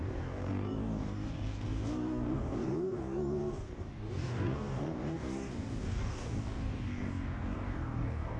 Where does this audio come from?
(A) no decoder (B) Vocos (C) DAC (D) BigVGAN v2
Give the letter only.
C